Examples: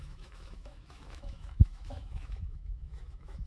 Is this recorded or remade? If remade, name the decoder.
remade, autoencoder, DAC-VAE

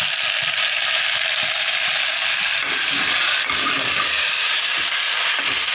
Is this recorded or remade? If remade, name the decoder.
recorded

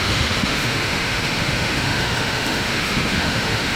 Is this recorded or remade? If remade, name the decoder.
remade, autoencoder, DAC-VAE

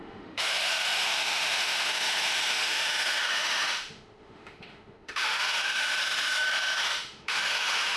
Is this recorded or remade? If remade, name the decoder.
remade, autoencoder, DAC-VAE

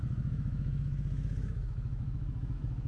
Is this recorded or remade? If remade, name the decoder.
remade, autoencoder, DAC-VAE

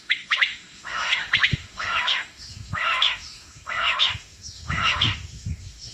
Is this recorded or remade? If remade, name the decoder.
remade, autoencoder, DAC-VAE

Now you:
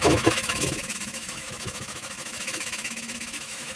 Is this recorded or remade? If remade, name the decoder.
remade, autoencoder, DAC-VAE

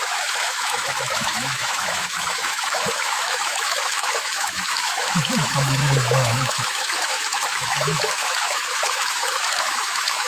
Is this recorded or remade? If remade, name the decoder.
remade, autoencoder, DAC-VAE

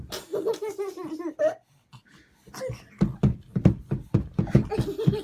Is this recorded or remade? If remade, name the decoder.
recorded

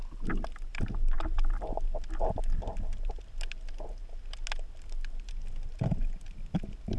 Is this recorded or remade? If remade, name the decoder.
recorded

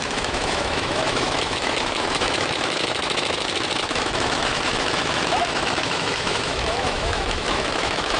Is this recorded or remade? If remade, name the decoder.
remade, autoencoder, DAC-VAE